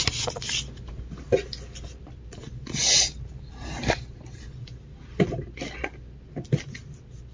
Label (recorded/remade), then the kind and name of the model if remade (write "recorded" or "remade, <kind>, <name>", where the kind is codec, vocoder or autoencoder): recorded